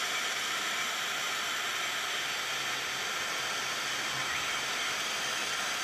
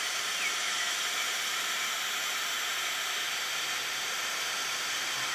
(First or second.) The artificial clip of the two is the second